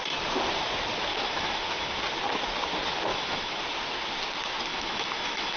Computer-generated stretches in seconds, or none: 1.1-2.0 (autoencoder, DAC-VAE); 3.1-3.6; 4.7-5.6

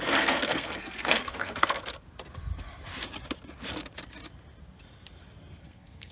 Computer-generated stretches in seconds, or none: 0.0-1.9 (codec, SNAC); 5.6-6.1

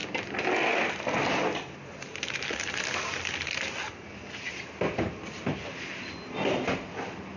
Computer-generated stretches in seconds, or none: none

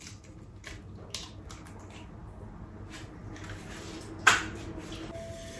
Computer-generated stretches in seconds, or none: none

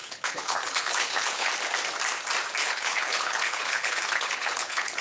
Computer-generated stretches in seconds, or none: 0.0-1.5 (codec, HILCodec); 2.6-5.0

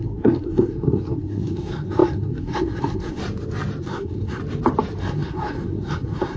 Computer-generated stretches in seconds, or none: 0.0-3.2 (codec, SNAC); 3.8-4.4; 5.0-6.4